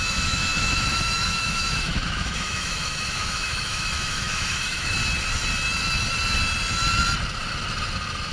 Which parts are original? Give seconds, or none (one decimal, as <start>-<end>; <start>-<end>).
5.0-8.3